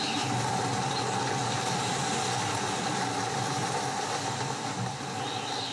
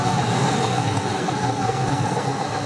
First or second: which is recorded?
first